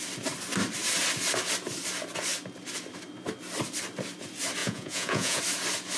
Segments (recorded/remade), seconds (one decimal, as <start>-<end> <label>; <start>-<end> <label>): 0.0-4.6 recorded; 4.6-5.4 remade; 5.4-6.0 recorded